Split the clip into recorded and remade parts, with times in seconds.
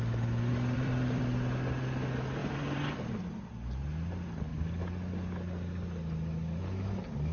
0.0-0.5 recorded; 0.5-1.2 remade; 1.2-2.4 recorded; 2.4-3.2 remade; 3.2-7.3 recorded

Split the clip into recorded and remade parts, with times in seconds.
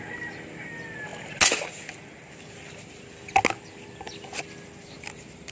0.0-5.5 recorded